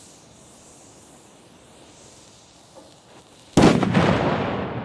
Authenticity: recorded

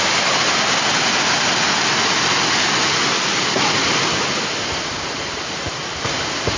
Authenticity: recorded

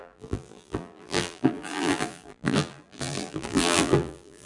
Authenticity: remade